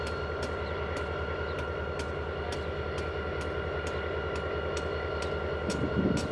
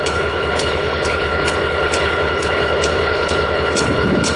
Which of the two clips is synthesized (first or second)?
second